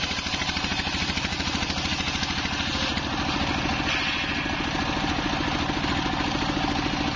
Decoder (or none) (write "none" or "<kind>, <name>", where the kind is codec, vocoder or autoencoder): none